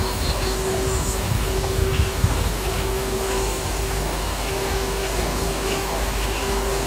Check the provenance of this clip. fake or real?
fake